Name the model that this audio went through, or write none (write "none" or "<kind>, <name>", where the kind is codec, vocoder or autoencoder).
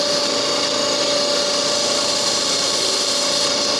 none